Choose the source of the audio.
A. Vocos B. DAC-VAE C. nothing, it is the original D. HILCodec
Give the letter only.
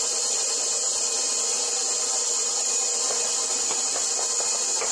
C